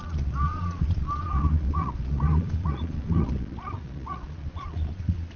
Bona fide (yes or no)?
no